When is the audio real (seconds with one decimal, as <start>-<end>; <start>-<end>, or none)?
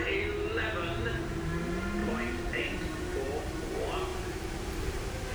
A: 0.0-2.0; 2.8-4.1; 4.8-5.3